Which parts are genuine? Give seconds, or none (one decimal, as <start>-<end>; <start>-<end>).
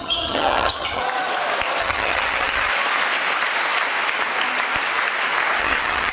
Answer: 1.0-1.8; 2.7-5.6